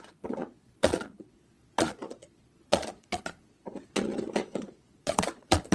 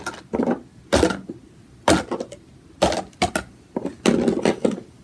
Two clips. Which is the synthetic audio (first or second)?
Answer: first